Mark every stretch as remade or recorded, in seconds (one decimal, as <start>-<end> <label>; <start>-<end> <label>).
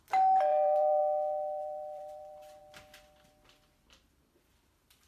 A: 0.0-0.5 recorded; 0.5-1.0 remade; 1.0-1.6 recorded; 1.6-2.6 remade; 2.6-5.1 recorded